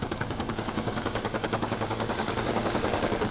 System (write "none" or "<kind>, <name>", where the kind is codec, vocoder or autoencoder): codec, DAC